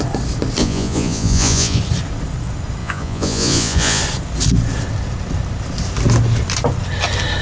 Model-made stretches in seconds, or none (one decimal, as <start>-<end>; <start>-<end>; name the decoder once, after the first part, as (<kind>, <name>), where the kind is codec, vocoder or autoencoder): 0.6-1.8 (vocoder, Vocos); 2.8-4.0